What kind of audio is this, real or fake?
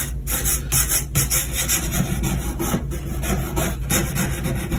real